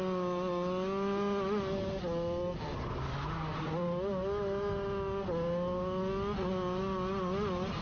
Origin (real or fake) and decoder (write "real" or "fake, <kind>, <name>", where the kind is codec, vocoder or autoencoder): real